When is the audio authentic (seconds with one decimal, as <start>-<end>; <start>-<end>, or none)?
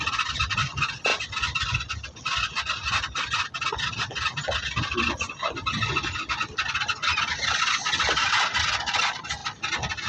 0.0-10.1